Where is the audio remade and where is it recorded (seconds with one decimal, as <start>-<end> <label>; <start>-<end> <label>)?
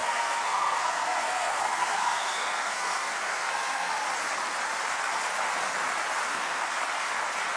0.0-4.0 remade; 4.0-6.3 recorded; 6.3-6.8 remade; 6.8-7.6 recorded